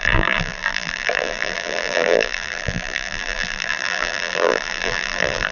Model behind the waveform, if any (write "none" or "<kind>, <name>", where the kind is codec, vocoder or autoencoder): vocoder, BigVGAN v2